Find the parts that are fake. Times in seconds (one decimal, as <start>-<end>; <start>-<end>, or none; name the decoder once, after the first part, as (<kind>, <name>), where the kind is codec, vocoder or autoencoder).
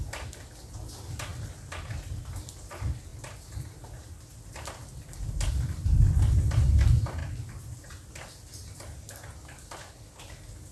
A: none